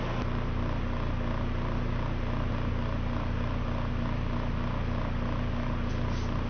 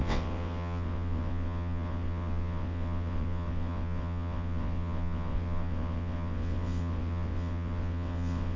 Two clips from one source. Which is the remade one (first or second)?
second